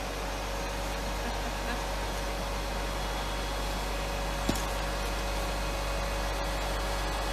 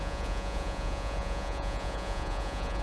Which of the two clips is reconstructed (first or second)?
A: second